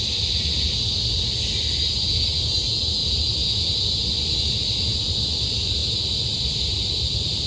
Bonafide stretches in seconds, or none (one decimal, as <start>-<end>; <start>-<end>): 0.0-7.5